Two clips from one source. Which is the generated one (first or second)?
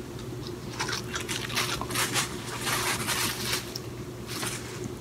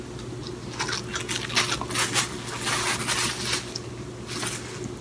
first